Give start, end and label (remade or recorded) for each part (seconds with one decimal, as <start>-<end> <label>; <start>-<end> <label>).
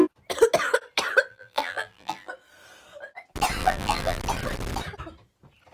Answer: 0.0-1.3 recorded; 1.3-2.3 remade; 2.3-3.6 recorded; 3.6-4.2 remade; 4.2-5.7 recorded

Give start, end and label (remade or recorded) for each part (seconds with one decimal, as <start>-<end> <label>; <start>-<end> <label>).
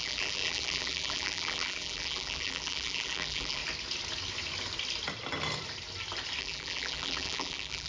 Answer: 0.0-3.6 remade; 3.6-6.4 recorded; 6.4-7.9 remade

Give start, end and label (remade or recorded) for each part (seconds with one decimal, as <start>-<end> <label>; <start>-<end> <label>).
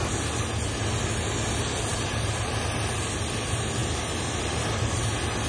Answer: 0.0-1.9 recorded; 1.9-2.9 remade; 2.9-3.8 recorded; 3.8-5.0 remade; 5.0-5.5 recorded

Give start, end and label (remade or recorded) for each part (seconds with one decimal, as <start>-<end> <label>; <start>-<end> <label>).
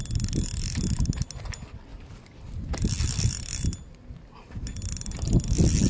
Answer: 0.0-5.9 recorded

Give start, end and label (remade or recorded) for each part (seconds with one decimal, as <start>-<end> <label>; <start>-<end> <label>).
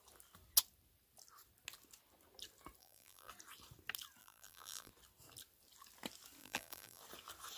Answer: 0.0-2.8 recorded; 2.8-3.3 remade; 3.3-4.2 recorded; 4.2-4.9 remade; 4.9-6.4 recorded; 6.4-7.0 remade; 7.0-7.6 recorded